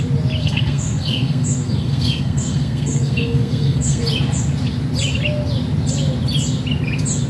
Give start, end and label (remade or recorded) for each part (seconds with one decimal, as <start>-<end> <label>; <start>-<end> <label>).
0.0-0.4 recorded; 0.4-4.0 remade; 4.0-7.3 recorded